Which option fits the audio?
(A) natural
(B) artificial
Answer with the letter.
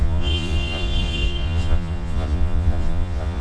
B